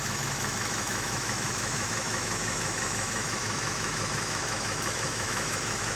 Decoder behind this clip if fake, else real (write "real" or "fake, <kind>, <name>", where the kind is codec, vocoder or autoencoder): fake, autoencoder, DAC-VAE